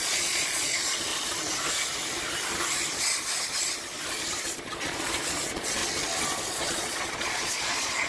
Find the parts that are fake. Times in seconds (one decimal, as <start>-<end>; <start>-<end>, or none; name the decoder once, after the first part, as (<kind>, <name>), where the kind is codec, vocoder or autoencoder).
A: 0.0-1.1 (vocoder, Vocos); 4.4-5.8; 6.5-8.1